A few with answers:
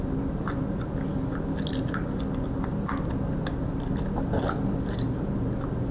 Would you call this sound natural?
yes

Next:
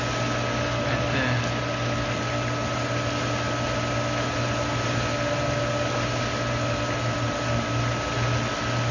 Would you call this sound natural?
yes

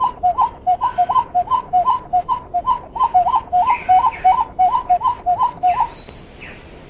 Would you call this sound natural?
yes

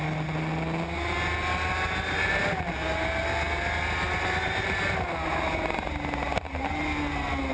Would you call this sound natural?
yes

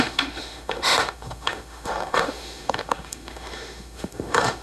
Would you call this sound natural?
no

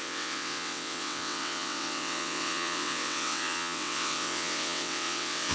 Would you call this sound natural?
no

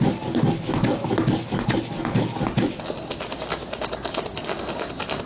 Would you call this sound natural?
yes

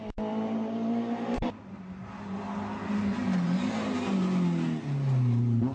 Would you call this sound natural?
yes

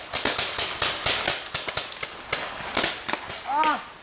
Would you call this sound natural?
yes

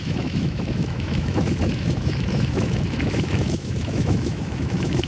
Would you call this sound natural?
no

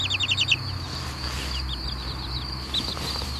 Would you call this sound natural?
yes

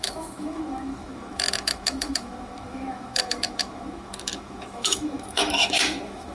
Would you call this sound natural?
no